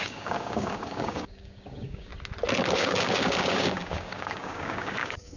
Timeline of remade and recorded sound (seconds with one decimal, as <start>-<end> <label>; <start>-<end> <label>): 0.0-2.1 remade; 2.1-2.7 recorded; 2.7-5.4 remade